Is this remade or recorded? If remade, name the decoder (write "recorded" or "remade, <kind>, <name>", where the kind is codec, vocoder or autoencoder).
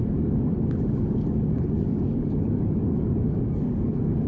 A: remade, codec, DAC